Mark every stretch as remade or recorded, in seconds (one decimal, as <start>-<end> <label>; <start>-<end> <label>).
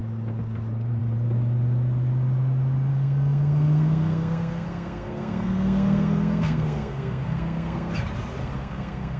0.0-2.9 recorded; 2.9-7.9 remade; 7.9-8.4 recorded; 8.4-9.2 remade